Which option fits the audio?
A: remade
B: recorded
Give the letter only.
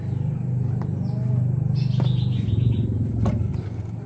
B